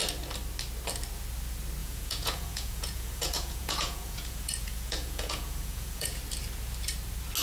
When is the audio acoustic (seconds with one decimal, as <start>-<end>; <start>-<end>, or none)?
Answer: 0.0-1.8; 6.2-7.4